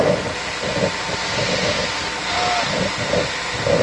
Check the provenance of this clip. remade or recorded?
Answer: recorded